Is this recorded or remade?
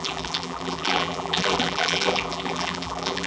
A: remade